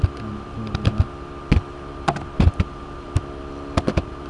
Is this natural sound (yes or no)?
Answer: yes